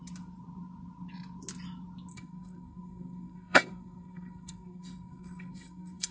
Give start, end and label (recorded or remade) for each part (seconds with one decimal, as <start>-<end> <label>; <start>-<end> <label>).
0.0-2.1 recorded; 2.1-6.1 remade